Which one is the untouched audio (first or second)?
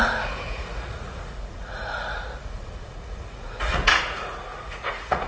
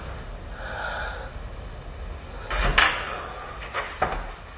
second